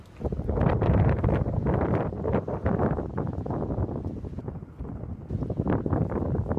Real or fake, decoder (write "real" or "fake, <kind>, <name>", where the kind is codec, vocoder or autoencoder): real